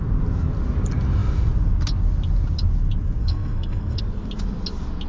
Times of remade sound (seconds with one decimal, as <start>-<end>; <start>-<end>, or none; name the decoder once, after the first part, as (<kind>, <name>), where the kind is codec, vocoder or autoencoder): 3.2-4.0 (codec, SNAC)